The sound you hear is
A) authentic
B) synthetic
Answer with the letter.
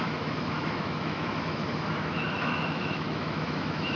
B